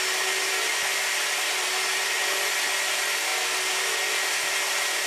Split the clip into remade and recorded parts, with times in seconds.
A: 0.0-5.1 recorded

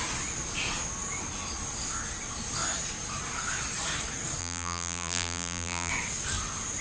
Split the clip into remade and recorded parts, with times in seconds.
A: 0.0-4.4 recorded; 4.4-5.9 remade; 5.9-6.8 recorded

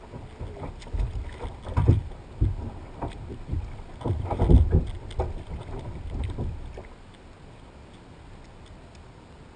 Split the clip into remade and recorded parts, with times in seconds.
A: 0.0-9.6 recorded